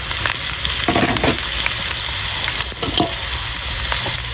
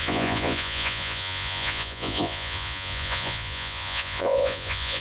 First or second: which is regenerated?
second